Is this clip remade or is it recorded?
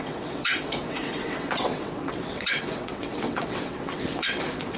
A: remade